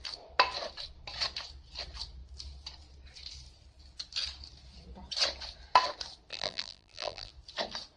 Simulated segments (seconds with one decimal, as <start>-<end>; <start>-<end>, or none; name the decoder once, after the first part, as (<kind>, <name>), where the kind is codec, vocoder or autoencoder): 6.3-7.3 (vocoder, BigVGAN v2)